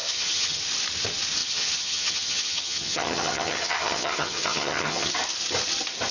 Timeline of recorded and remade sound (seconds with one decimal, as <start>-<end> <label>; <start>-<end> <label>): 0.0-0.6 remade; 0.6-1.4 recorded; 1.4-5.1 remade; 5.1-6.1 recorded

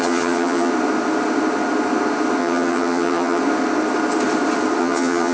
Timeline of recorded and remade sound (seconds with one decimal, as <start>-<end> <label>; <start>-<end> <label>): 0.0-0.7 remade; 0.7-2.4 recorded; 2.4-3.4 remade; 3.4-4.8 recorded; 4.8-5.3 remade